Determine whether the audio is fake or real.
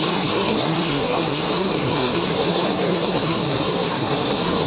fake